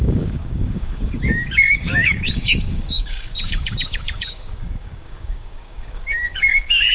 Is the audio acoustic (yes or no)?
no